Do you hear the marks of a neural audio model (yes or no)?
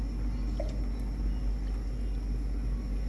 no